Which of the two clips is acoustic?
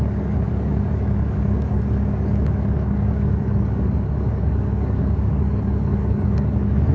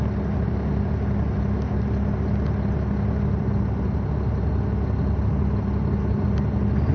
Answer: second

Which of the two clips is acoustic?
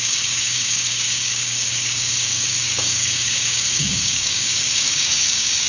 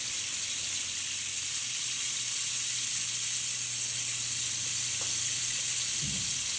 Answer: second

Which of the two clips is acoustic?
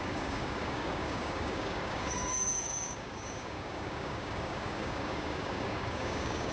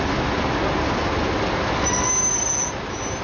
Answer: second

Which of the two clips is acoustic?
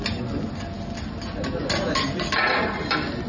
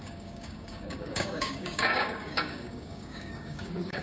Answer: first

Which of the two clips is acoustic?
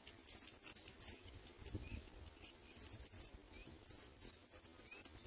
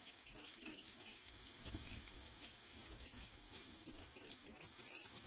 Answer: first